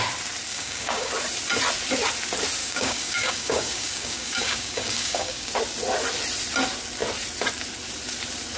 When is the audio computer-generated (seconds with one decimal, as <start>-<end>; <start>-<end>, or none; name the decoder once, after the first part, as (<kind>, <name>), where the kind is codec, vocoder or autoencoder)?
0.5-1.1 (codec, DAC); 2.6-5.5